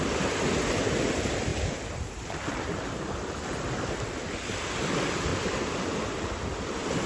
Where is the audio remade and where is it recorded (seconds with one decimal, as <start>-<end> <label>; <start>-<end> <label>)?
0.0-7.1 recorded